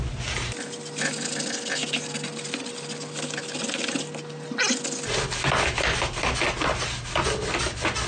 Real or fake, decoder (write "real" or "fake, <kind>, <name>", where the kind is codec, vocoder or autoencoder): real